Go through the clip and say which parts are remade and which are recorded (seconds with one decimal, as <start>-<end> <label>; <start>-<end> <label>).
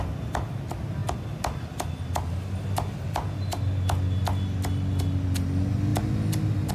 0.0-6.7 recorded